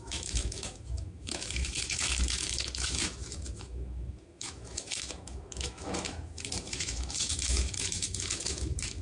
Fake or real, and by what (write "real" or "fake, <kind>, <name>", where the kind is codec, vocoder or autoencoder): fake, autoencoder, DAC-VAE